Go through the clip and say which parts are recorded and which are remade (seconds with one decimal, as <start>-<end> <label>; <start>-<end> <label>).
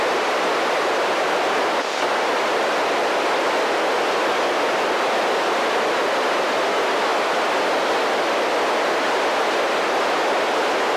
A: 0.0-11.0 recorded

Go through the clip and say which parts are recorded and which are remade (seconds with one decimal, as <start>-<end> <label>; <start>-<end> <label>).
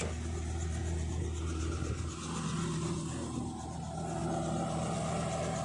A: 0.0-5.6 recorded